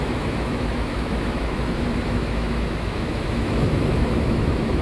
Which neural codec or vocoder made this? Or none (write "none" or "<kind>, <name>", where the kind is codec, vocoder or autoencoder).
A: autoencoder, DAC-VAE